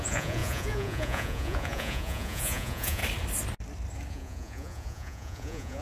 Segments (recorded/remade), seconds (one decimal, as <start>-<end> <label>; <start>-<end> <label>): 0.0-3.0 remade; 3.0-4.1 recorded; 4.1-5.8 remade